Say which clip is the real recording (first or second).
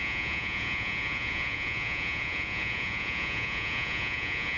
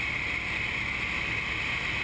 second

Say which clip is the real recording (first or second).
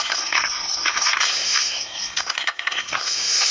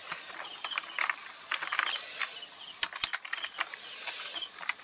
second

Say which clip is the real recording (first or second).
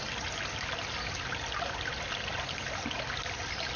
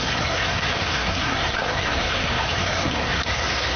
first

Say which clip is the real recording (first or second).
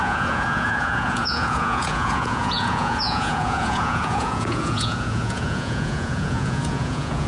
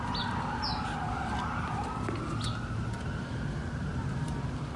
second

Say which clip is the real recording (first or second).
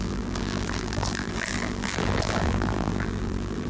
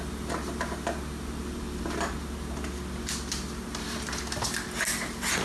second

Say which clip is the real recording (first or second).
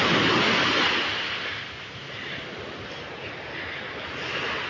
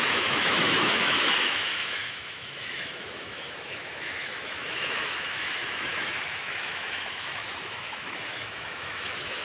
first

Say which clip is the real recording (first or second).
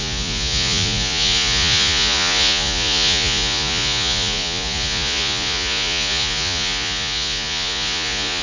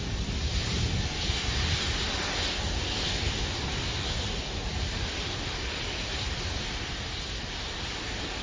second